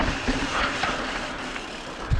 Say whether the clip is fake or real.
fake